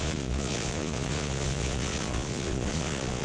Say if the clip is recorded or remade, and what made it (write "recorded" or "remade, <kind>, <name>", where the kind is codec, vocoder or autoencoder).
remade, vocoder, Vocos